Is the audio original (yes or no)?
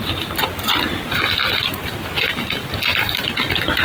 yes